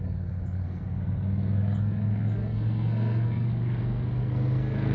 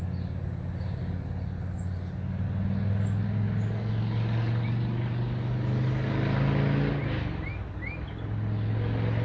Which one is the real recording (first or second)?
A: second